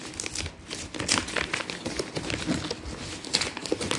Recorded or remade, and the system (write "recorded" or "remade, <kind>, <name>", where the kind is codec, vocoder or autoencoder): recorded